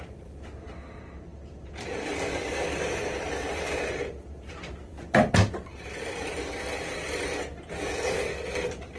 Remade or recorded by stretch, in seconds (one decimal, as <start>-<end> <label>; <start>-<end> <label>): 0.0-1.3 recorded; 1.3-3.9 remade; 3.9-5.7 recorded; 5.7-6.5 remade; 6.5-9.0 recorded